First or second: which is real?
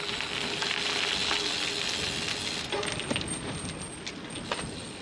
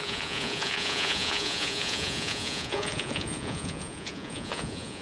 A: first